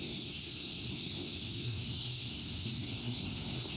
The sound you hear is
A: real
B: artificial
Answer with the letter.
B